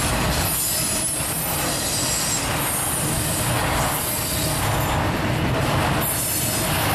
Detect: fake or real real